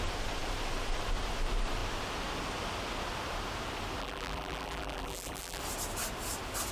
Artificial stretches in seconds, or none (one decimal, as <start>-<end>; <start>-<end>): 4.0-5.6